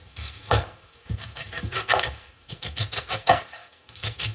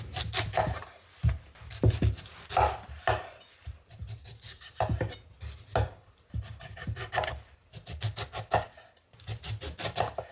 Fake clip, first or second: first